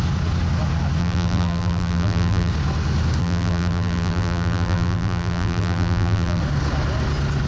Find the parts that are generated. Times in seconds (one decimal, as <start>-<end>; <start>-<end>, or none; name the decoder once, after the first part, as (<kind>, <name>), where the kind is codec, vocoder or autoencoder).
1.0-2.5 (vocoder, BigVGAN v2); 3.2-6.4